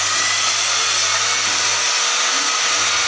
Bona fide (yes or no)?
yes